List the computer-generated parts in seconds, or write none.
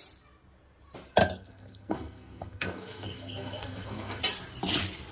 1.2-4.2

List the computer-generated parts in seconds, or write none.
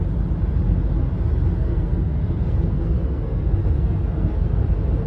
1.5-4.6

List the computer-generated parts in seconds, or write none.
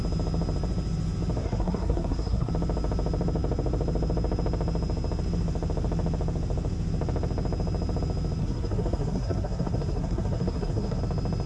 1.4-2.5; 8.4-11.0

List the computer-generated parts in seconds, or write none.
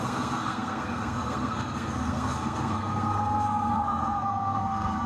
0.0-5.1